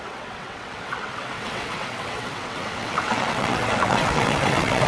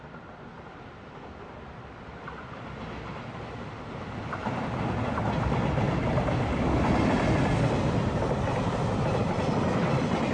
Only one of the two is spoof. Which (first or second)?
first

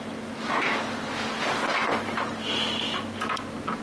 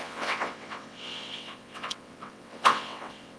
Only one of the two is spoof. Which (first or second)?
second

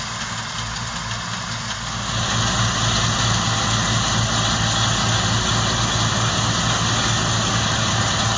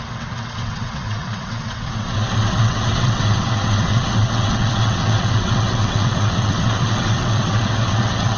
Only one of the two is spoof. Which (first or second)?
second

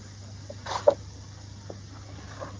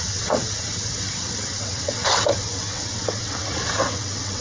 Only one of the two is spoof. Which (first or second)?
second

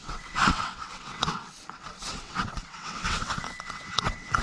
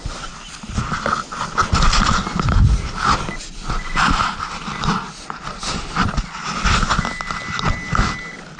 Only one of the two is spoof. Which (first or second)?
first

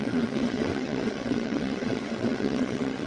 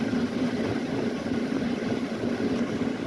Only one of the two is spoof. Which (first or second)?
first